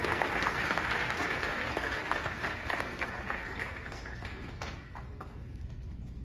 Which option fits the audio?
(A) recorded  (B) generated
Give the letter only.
B